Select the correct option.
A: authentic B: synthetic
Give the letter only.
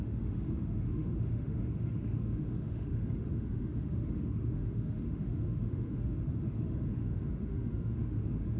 B